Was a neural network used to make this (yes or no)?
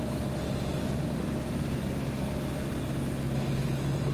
no